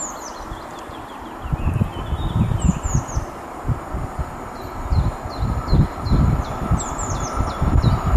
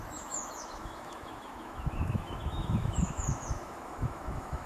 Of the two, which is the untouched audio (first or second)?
first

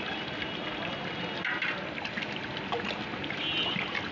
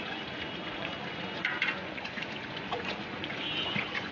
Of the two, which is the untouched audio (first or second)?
first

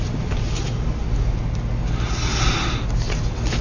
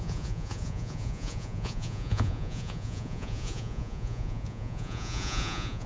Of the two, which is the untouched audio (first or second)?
first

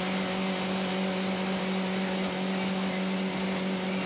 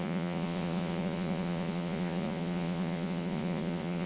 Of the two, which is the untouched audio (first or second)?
first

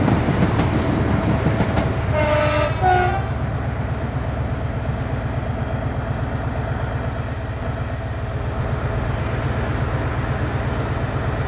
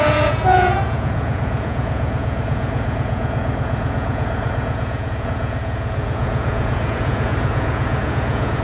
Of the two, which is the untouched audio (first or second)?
first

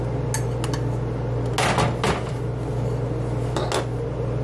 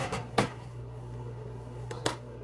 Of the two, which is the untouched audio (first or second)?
first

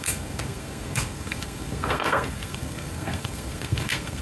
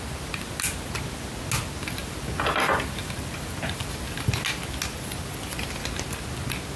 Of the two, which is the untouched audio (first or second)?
second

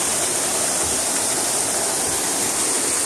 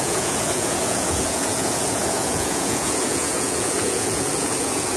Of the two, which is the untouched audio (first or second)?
first